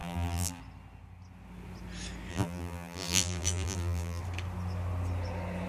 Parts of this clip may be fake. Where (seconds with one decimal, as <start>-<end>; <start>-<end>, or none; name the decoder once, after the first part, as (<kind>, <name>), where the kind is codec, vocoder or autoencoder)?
0.0-0.6 (vocoder, BigVGAN v2); 2.3-4.2